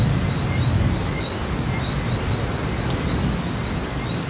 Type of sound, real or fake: real